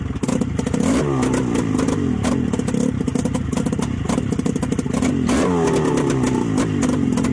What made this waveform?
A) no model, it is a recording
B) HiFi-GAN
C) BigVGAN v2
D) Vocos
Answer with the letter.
A